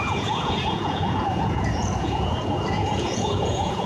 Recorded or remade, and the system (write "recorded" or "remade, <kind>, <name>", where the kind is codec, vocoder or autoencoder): remade, vocoder, Vocos